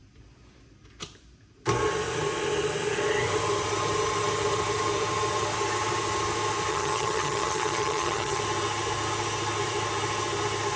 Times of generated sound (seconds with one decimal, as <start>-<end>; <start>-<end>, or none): 6.7-8.4